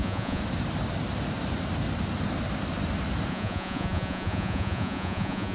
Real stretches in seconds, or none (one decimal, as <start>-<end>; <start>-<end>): 0.4-3.3